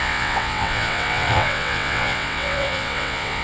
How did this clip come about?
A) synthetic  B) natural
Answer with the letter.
A